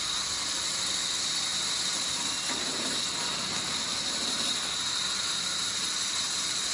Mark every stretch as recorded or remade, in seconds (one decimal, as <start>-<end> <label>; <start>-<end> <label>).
0.0-6.7 recorded